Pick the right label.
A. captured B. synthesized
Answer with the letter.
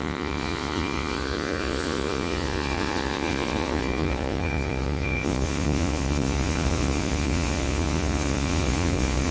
B